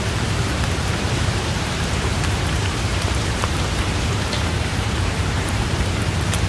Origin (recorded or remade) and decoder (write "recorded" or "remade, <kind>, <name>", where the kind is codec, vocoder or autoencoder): remade, vocoder, BigVGAN v2